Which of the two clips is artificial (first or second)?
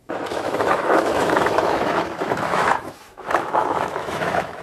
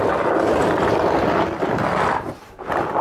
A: first